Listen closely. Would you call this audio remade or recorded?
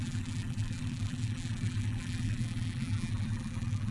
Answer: remade